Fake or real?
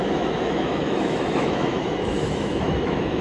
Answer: fake